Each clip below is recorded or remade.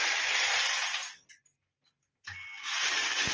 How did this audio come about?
recorded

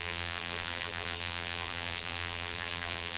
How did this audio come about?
remade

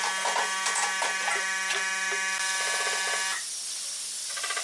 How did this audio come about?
recorded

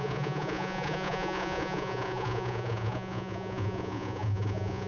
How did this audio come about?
remade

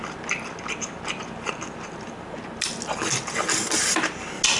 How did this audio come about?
recorded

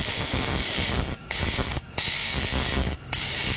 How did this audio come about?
remade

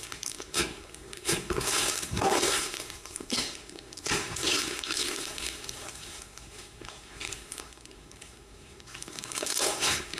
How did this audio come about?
remade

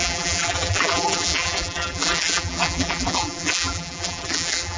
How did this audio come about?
remade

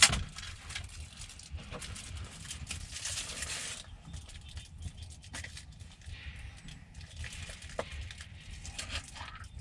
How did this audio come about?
recorded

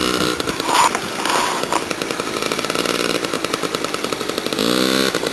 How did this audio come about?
recorded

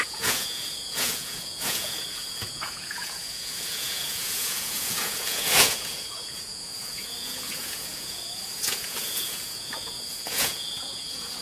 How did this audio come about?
remade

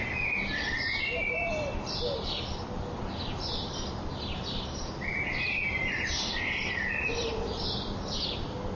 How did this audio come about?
recorded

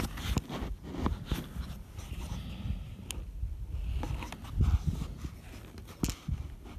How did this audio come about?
recorded